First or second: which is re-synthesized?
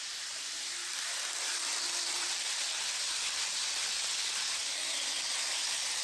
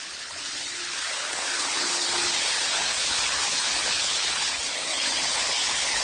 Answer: second